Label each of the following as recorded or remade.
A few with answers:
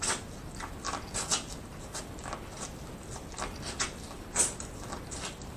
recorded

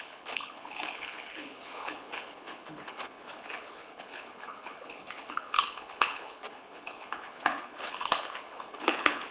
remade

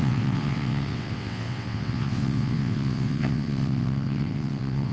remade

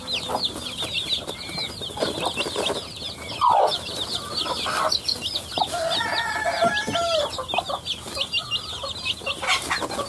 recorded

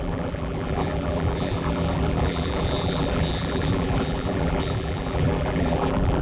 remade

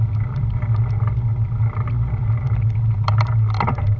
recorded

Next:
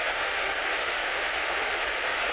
remade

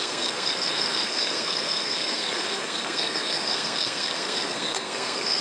remade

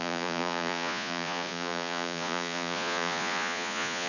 remade